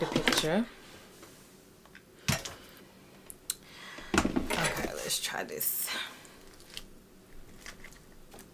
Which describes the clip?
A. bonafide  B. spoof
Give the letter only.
A